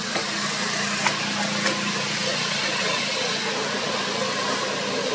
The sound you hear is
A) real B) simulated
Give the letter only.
A